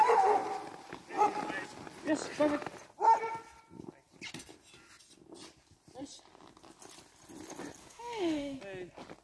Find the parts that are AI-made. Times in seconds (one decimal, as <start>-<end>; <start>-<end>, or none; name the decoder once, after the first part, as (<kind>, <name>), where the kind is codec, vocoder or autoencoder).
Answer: 7.8-8.6 (autoencoder, DAC-VAE)